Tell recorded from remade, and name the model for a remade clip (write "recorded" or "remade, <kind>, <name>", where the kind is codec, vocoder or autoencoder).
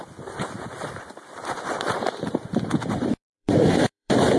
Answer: remade, vocoder, BigVGAN v2